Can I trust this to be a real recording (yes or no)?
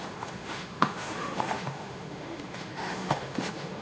no